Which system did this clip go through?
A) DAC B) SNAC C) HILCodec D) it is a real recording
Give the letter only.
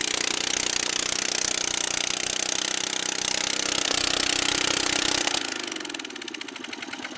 D